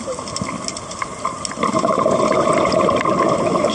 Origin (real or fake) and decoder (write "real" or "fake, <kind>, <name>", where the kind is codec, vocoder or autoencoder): real